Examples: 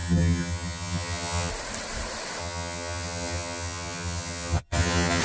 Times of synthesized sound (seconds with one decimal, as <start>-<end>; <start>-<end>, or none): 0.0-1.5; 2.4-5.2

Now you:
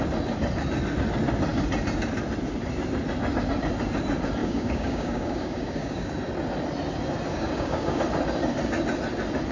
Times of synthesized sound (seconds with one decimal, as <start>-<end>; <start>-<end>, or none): 4.4-6.1; 7.3-8.0

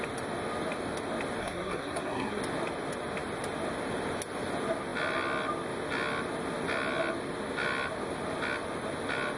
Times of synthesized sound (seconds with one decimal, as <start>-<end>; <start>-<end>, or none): 1.4-2.4

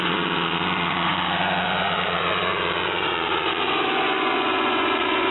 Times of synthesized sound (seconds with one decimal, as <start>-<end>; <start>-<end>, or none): 0.0-5.3

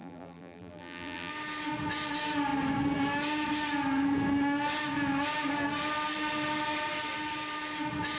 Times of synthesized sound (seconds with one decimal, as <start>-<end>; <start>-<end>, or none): 0.0-1.3

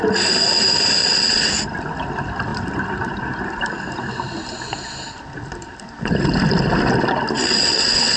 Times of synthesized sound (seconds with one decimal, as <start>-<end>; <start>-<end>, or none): 1.0-1.5; 7.4-8.2

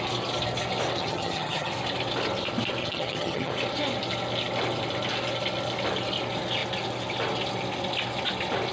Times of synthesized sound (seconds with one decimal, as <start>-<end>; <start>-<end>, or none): 1.0-1.7; 2.8-3.5